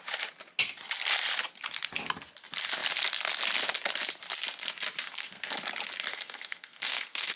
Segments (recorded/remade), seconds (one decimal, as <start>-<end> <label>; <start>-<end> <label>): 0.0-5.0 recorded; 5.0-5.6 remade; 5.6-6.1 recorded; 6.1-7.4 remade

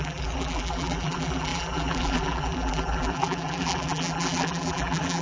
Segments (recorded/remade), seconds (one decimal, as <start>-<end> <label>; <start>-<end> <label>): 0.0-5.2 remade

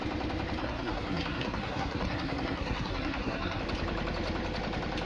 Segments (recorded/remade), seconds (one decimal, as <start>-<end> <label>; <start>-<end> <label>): 0.0-0.6 recorded; 0.6-3.6 remade; 3.6-5.0 recorded